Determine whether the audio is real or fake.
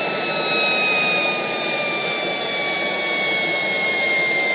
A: real